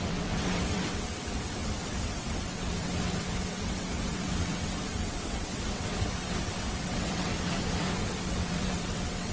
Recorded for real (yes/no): no